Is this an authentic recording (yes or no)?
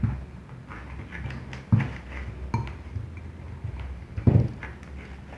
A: yes